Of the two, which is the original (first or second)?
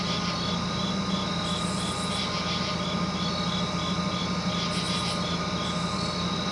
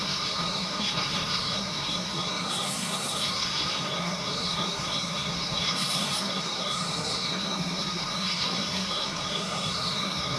first